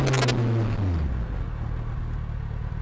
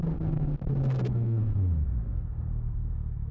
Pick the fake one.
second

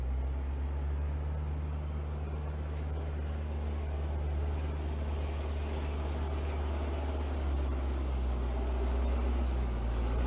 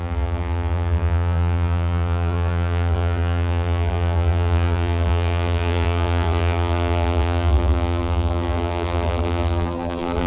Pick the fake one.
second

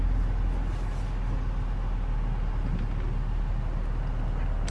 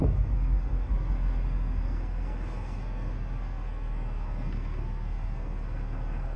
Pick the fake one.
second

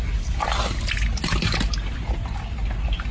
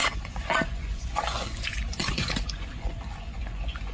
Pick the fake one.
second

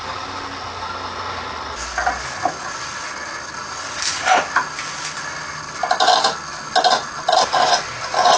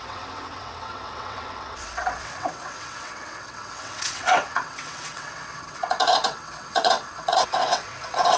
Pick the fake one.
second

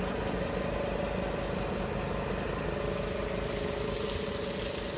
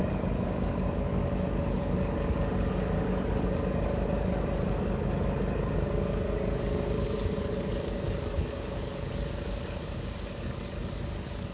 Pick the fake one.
second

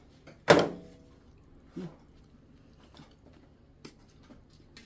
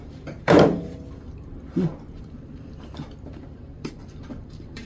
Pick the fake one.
second